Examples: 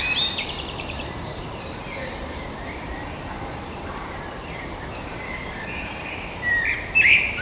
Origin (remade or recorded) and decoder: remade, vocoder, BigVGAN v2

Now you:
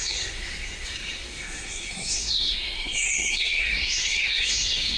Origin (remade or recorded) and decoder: remade, codec, SNAC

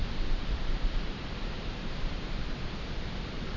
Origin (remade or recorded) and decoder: remade, vocoder, BigVGAN v2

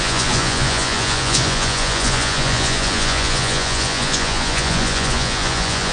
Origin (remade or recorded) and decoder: remade, vocoder, Vocos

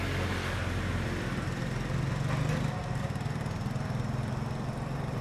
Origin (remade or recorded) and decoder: recorded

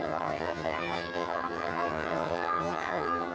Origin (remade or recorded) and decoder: remade, vocoder, HiFi-GAN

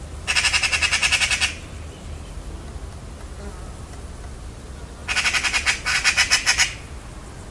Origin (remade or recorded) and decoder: recorded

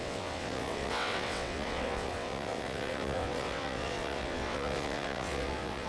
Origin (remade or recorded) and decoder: remade, vocoder, WaveNeXt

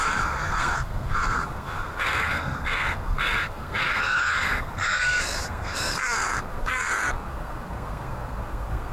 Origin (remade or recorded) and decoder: remade, codec, SNAC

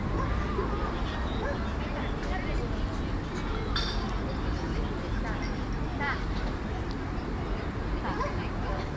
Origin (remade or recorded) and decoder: recorded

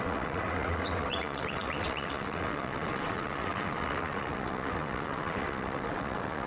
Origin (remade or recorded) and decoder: remade, vocoder, WaveNeXt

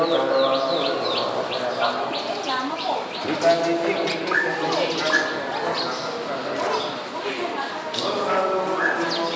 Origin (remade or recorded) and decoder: recorded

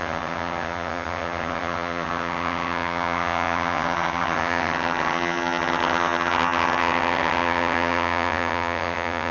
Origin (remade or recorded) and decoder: remade, vocoder, HiFi-GAN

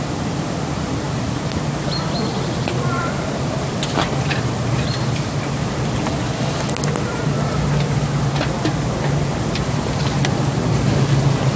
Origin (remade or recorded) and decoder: recorded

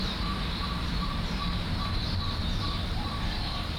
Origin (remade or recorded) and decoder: remade, vocoder, BigVGAN v2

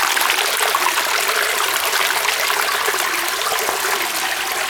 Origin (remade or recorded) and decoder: recorded